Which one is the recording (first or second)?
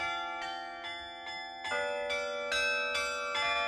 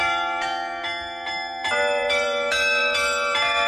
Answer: first